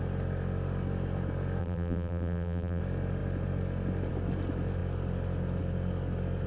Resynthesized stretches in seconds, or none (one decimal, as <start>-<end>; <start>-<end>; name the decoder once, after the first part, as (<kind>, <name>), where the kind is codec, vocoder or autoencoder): 1.6-2.8 (vocoder, BigVGAN v2)